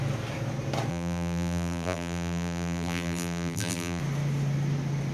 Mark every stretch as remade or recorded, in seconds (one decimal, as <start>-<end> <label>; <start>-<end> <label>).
0.0-0.9 recorded; 0.9-4.0 remade; 4.0-5.1 recorded